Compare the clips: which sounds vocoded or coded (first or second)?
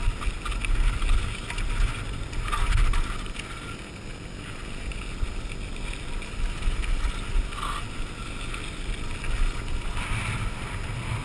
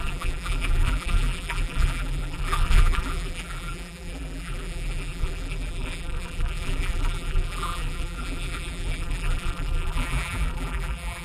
second